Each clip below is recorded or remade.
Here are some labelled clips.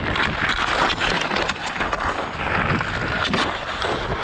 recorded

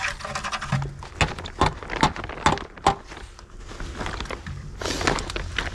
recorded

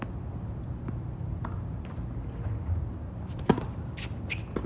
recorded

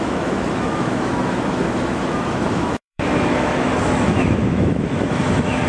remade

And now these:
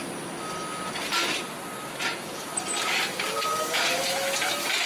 recorded